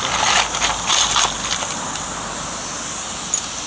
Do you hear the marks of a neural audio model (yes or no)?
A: no